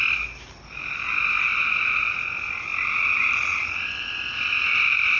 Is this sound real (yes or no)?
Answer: yes